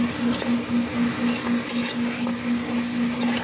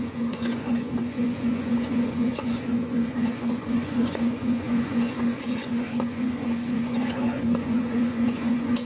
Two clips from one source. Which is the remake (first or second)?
second